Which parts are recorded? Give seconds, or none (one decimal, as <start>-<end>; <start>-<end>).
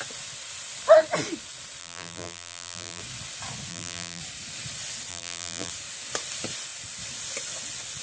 0.0-1.8; 3.0-3.7; 4.2-5.1; 5.7-8.0